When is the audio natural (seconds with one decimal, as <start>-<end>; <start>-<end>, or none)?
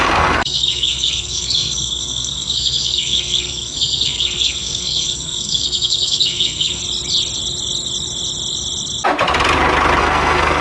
6.8-10.0